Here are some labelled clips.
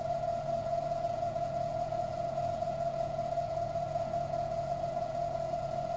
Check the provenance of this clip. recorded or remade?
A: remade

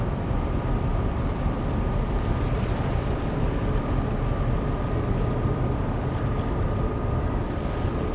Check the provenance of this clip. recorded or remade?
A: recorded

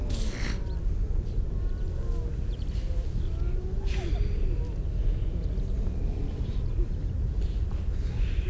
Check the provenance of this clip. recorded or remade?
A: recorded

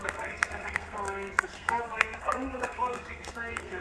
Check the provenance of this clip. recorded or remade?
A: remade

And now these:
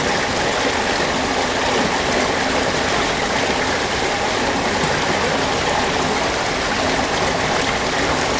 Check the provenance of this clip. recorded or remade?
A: recorded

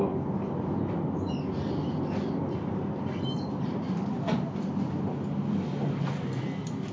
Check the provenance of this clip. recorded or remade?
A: recorded